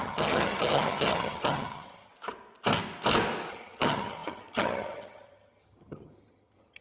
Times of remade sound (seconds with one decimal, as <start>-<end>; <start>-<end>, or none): 0.0-2.1; 3.5-6.8